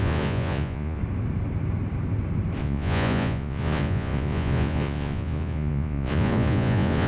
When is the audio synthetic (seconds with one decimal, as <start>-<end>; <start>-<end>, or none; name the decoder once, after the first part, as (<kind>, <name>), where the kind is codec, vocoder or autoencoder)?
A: 0.0-1.0 (vocoder, Vocos); 2.6-7.1